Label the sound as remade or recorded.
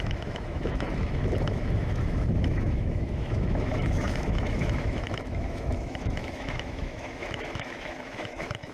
remade